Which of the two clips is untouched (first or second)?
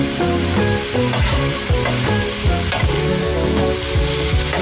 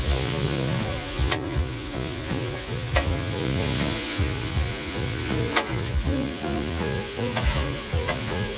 first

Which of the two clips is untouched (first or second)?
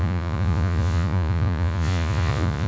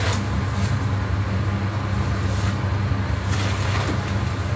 second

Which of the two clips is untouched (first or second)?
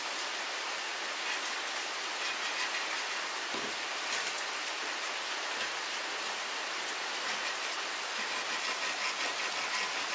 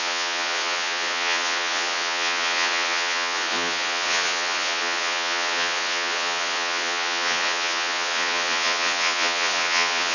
first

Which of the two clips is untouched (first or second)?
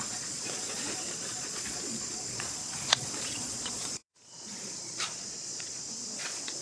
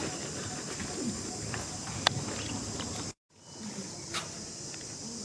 second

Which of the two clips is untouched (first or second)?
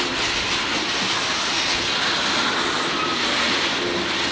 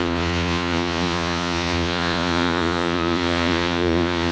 first